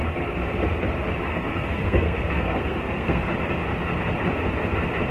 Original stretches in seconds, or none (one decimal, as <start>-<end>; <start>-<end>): 0.0-1.3; 3.3-5.1